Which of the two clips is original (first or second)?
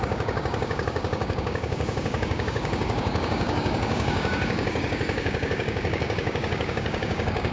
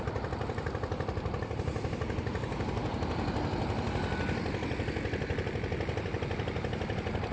second